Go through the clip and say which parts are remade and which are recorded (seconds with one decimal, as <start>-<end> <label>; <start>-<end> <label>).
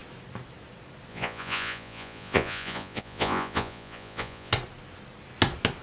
0.0-1.1 recorded; 1.1-4.5 remade; 4.5-5.8 recorded